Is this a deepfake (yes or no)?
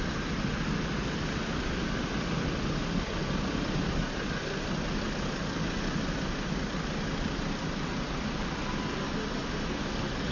no